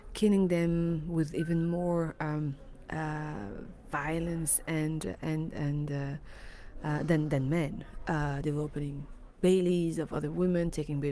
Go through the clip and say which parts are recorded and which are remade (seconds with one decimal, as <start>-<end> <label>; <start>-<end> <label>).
0.0-8.0 recorded; 8.0-9.7 remade; 9.7-11.1 recorded

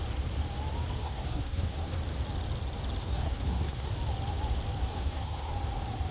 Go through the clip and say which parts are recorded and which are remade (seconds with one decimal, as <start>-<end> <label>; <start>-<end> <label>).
0.0-1.0 recorded; 1.0-2.0 remade; 2.0-3.0 recorded; 3.0-3.9 remade; 3.9-4.9 recorded; 4.9-5.5 remade; 5.5-6.1 recorded

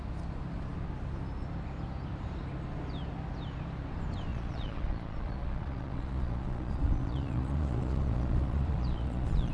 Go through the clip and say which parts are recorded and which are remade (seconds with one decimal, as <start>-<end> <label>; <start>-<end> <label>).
0.0-4.3 recorded; 4.3-9.5 remade

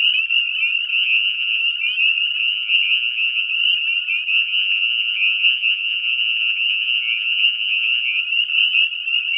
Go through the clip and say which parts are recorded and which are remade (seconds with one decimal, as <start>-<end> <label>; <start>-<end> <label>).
0.0-0.9 recorded; 0.9-1.6 remade; 1.6-2.4 recorded; 2.4-3.5 remade; 3.5-4.3 recorded; 4.3-8.2 remade; 8.2-9.4 recorded